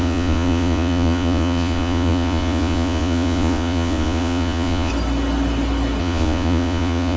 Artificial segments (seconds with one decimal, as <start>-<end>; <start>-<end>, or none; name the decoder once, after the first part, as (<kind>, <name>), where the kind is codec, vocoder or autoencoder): 0.0-4.9 (vocoder, Vocos); 6.0-7.2